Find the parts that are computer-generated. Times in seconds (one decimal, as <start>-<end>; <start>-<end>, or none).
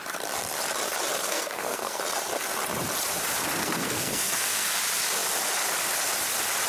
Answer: 1.2-2.0; 3.6-4.8